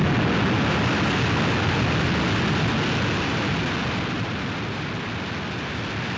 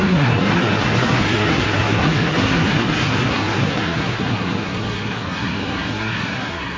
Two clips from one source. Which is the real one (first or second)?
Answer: first